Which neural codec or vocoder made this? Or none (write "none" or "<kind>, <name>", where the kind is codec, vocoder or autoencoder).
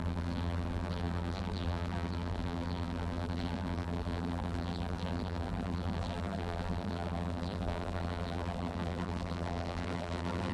vocoder, BigVGAN v2